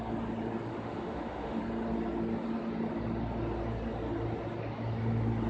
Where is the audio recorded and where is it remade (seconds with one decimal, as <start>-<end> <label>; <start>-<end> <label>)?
0.0-0.7 recorded; 0.7-1.6 remade; 1.6-5.5 recorded